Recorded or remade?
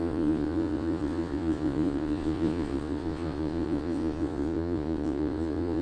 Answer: remade